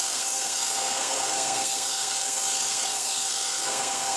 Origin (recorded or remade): remade